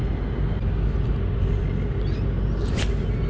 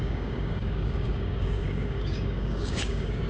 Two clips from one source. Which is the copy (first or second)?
second